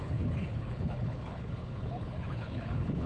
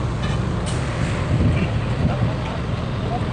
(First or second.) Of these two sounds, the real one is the second